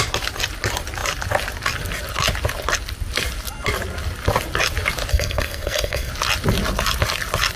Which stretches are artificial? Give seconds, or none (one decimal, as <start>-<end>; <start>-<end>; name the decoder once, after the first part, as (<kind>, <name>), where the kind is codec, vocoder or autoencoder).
5.1-6.1 (codec, SNAC)